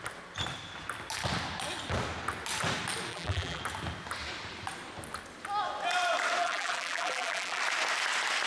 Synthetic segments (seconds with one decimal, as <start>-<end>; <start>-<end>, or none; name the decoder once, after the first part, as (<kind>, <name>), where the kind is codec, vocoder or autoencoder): 3.1-3.6 (vocoder, BigVGAN v2); 6.4-7.6